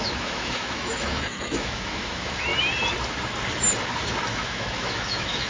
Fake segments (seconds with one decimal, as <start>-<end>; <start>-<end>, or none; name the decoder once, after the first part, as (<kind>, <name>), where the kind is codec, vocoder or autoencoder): 0.0-2.5 (autoencoder, DAC-VAE); 4.3-5.5